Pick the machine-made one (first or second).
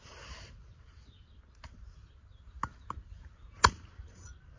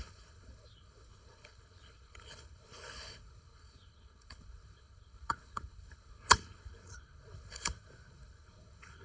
second